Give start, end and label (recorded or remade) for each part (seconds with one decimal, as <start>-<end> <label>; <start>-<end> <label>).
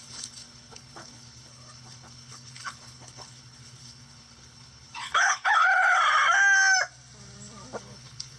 0.0-6.0 remade; 6.0-7.8 recorded; 7.8-8.4 remade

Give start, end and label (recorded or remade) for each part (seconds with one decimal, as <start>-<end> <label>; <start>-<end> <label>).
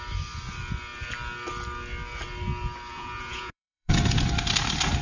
0.0-2.9 recorded; 2.9-4.0 remade; 4.0-5.0 recorded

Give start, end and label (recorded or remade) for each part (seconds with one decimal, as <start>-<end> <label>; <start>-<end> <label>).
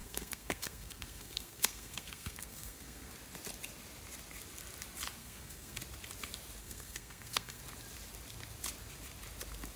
0.0-3.1 remade; 3.1-5.2 recorded; 5.2-5.8 remade; 5.8-6.6 recorded; 6.6-7.6 remade; 7.6-9.8 recorded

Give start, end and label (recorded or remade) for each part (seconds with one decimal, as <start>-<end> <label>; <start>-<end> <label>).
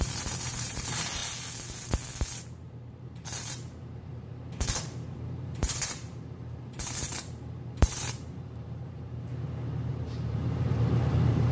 0.0-1.2 remade; 1.2-2.9 recorded; 2.9-4.3 remade; 4.3-4.8 recorded; 4.8-9.3 remade; 9.3-9.9 recorded; 9.9-11.5 remade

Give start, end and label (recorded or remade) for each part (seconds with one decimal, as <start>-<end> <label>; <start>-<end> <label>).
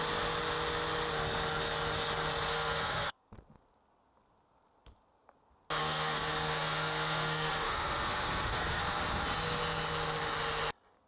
0.0-2.5 recorded; 2.5-3.3 remade; 3.3-5.8 recorded; 5.8-8.8 remade; 8.8-11.1 recorded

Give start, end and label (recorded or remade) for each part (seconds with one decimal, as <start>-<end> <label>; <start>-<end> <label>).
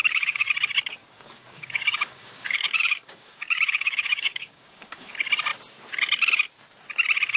0.0-0.5 remade; 0.5-1.0 recorded; 1.0-5.1 remade; 5.1-7.4 recorded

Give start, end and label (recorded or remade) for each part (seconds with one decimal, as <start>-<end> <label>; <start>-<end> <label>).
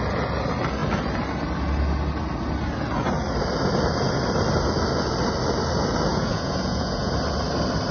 0.0-6.1 recorded; 6.1-7.1 remade; 7.1-7.9 recorded